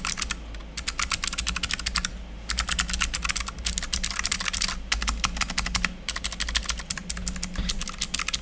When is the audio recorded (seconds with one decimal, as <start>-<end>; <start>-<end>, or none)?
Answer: 0.0-8.4